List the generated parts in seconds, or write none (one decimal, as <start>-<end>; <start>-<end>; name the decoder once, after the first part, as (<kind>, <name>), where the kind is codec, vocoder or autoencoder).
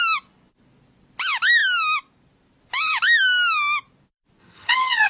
4.4-5.1 (vocoder, HiFi-GAN)